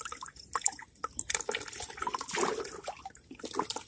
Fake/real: real